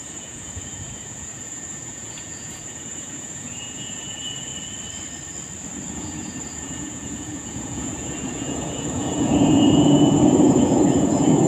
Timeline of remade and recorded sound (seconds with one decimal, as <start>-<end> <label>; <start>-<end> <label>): 0.0-4.5 remade; 4.5-5.9 recorded; 5.9-11.5 remade